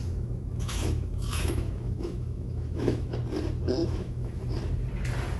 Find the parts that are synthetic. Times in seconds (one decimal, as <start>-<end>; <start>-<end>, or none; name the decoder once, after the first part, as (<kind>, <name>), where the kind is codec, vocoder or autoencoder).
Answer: 0.0-3.2 (autoencoder, DAC-VAE); 3.8-4.4

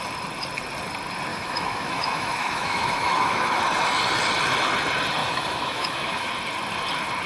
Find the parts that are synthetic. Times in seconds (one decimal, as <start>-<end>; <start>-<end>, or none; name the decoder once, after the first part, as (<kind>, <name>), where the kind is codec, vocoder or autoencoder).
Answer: 1.3-3.6 (autoencoder, DAC-VAE); 5.2-6.3

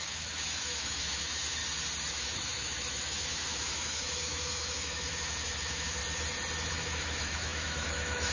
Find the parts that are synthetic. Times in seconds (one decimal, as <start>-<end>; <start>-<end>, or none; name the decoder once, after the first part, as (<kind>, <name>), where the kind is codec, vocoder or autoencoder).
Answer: 0.0-1.6 (autoencoder, DAC-VAE); 2.1-6.0; 6.7-8.3

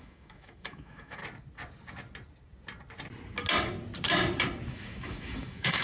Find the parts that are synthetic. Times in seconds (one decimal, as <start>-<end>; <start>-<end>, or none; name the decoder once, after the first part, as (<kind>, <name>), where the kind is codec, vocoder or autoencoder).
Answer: 0.0-1.2 (autoencoder, DAC-VAE); 4.7-5.8

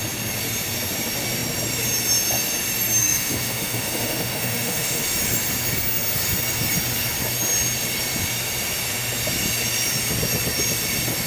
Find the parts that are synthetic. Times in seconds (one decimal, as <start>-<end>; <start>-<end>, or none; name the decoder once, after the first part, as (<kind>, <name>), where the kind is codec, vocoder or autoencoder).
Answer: 3.0-5.0 (autoencoder, DAC-VAE)

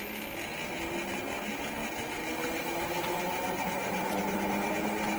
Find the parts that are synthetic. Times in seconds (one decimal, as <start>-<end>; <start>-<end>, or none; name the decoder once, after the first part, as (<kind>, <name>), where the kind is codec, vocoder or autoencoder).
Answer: none

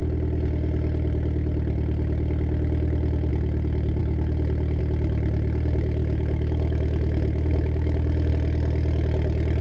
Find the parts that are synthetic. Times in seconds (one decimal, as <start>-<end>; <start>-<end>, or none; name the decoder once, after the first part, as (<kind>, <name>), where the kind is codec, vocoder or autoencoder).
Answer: 6.0-8.3 (autoencoder, DAC-VAE)